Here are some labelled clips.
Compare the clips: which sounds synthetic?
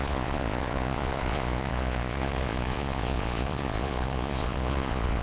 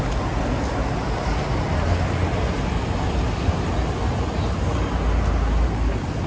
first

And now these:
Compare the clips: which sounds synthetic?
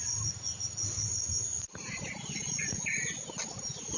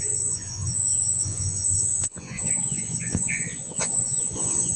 second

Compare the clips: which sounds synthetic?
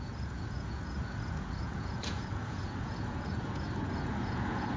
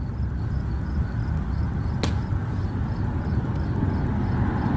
first